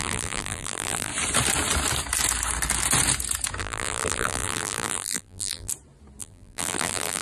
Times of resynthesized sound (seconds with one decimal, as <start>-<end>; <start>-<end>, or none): 0.0-1.1; 3.6-5.7; 6.2-7.2